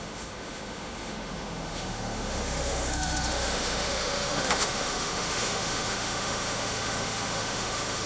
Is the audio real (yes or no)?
no